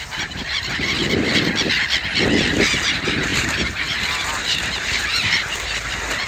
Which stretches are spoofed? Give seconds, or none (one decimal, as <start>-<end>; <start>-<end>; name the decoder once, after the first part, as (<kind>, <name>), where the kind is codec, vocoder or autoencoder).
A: 0.0-1.0 (vocoder, BigVGAN v2); 2.9-6.3